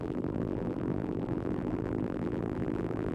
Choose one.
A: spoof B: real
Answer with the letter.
A